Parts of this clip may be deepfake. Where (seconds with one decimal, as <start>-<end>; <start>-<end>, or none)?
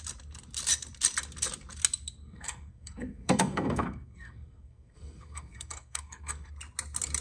2.2-6.5